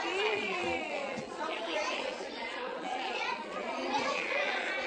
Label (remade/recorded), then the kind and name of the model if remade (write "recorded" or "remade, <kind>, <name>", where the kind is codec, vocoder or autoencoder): remade, vocoder, Vocos